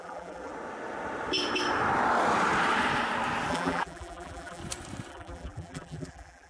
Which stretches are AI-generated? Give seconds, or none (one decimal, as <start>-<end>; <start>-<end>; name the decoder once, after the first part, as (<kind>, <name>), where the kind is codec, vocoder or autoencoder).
0.0-0.5 (vocoder, BigVGAN v2); 3.5-4.6; 5.1-6.5